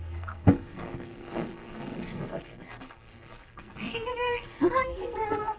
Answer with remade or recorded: remade